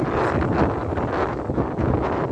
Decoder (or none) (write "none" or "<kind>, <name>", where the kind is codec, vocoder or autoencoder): none